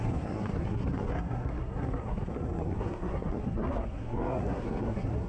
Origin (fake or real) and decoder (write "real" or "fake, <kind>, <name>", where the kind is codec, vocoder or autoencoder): fake, codec, SNAC